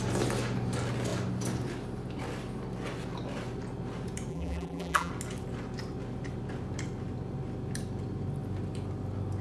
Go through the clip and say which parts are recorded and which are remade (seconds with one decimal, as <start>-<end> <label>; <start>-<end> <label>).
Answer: 0.0-4.3 recorded; 4.3-5.1 remade; 5.1-9.4 recorded